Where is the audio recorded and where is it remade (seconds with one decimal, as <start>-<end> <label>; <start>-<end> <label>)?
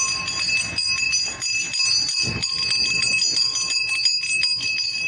0.0-5.1 recorded